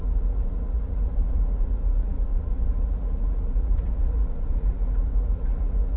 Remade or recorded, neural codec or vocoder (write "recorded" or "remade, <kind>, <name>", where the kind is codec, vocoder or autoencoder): remade, vocoder, Vocos